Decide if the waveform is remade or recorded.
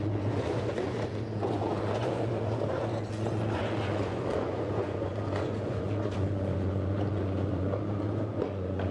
remade